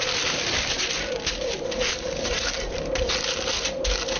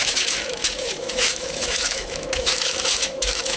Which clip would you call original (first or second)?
first